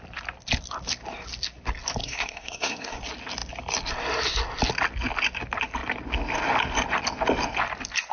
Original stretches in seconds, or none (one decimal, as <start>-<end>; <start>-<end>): 0.0-2.0; 3.0-8.1